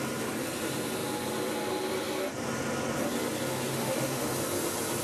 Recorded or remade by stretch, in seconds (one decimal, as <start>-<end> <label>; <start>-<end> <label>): 0.0-3.7 recorded; 3.7-4.3 remade; 4.3-5.0 recorded